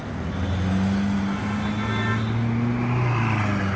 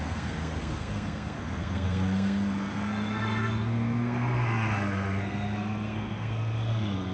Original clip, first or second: first